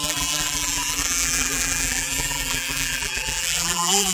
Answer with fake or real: fake